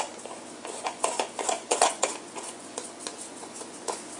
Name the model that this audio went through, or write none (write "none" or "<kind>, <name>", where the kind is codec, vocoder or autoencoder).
vocoder, Vocos